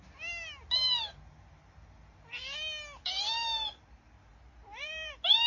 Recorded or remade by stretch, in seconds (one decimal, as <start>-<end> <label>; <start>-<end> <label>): 0.0-4.3 recorded; 4.3-5.1 remade; 5.1-5.5 recorded